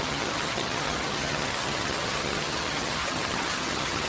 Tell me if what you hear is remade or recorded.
remade